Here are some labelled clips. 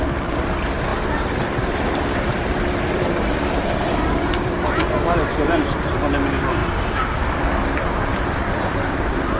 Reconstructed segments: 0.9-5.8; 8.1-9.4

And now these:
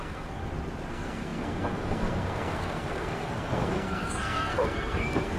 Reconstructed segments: 0.0-0.4; 0.9-5.4

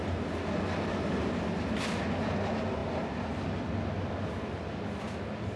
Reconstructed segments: none